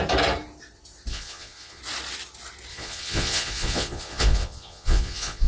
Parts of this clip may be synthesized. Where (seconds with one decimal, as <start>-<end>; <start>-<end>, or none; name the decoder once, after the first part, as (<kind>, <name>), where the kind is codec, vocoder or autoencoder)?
1.1-1.8 (vocoder, Vocos); 2.7-5.5